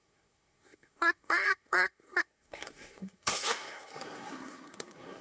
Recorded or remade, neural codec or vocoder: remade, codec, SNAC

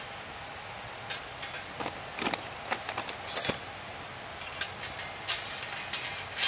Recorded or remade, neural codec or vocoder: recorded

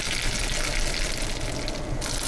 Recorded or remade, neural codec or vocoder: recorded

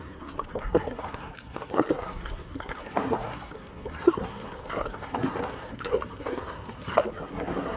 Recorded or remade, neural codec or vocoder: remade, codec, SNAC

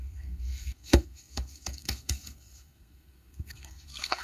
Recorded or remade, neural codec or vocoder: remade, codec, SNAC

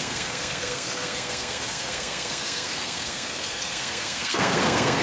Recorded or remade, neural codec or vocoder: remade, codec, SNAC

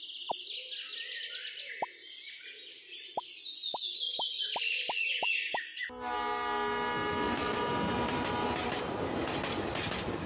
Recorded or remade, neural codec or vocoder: recorded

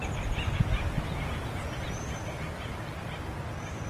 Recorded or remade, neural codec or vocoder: recorded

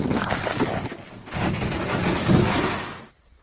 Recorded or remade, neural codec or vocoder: recorded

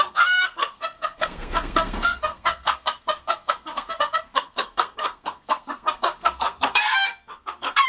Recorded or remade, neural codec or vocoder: remade, codec, SNAC